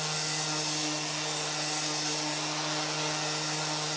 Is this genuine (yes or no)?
yes